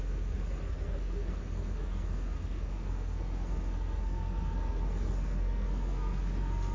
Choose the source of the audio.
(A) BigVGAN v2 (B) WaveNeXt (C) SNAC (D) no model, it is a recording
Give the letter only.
C